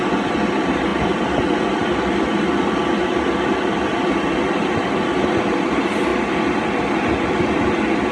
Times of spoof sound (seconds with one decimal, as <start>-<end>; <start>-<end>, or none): none